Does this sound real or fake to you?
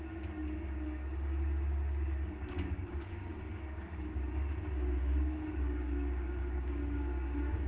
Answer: fake